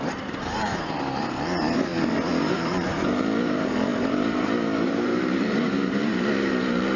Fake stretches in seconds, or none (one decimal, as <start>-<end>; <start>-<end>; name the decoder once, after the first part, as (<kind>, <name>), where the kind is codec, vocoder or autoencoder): 0.0-1.9 (vocoder, BigVGAN v2); 2.5-7.0